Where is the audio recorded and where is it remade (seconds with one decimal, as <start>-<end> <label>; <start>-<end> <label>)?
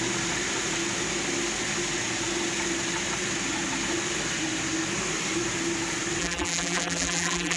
0.0-6.2 recorded; 6.2-7.6 remade